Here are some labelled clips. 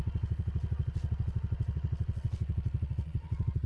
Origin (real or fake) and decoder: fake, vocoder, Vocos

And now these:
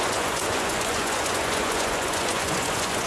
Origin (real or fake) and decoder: fake, vocoder, Vocos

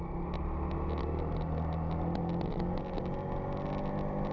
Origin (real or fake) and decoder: real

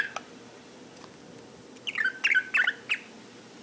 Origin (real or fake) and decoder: real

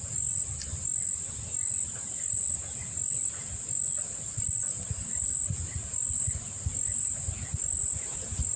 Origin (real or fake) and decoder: real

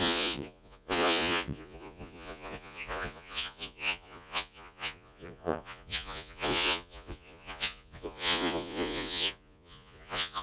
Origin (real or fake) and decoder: fake, vocoder, Vocos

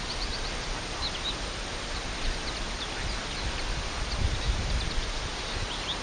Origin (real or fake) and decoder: real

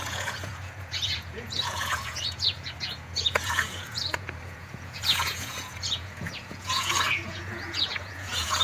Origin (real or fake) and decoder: fake, vocoder, Vocos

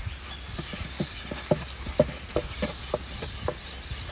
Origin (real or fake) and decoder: real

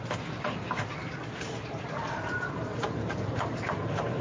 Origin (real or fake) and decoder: real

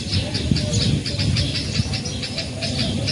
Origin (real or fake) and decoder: real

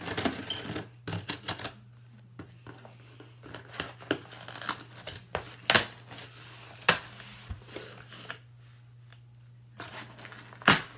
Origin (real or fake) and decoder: real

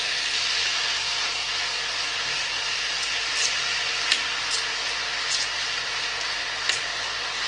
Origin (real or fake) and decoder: real